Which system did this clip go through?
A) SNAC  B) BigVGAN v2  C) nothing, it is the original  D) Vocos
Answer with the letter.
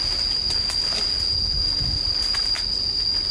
C